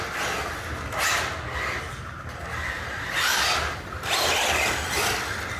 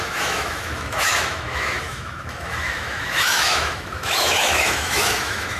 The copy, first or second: second